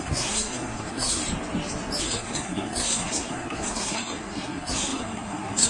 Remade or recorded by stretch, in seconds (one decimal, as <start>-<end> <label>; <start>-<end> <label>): 0.0-1.2 remade; 1.2-2.0 recorded; 2.0-5.7 remade